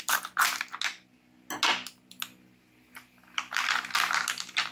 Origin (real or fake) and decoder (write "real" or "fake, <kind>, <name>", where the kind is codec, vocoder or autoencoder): real